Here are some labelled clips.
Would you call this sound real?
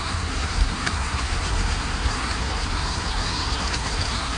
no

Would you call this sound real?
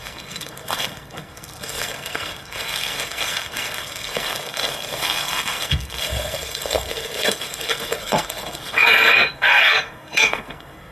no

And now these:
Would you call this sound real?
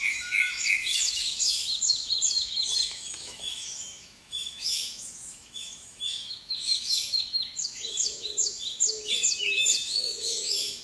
no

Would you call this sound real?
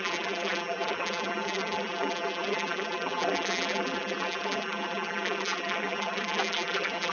no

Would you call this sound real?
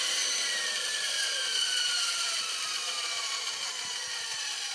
yes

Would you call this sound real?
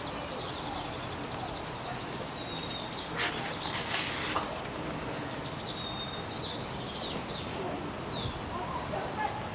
yes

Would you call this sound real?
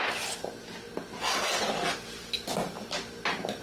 yes